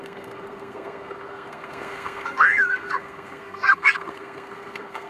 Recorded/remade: remade